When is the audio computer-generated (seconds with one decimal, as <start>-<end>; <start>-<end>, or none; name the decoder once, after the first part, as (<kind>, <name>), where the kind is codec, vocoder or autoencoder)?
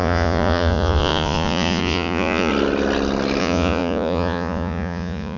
0.0-2.5 (vocoder, Vocos); 3.4-5.4